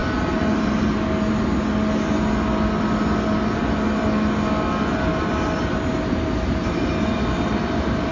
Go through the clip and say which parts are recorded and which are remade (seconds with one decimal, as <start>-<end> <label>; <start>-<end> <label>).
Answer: 0.0-6.5 recorded; 6.5-8.1 remade